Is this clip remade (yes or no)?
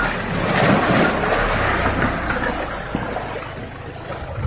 no